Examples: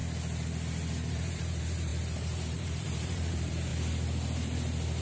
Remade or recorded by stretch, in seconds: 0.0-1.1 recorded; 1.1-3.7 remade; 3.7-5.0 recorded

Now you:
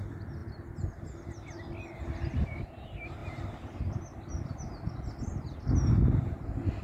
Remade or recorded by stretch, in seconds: 0.0-6.8 recorded

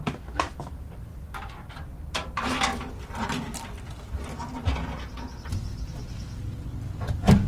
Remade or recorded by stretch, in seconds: 0.0-7.5 recorded